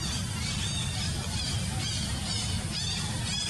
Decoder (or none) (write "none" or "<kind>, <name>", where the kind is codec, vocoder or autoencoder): none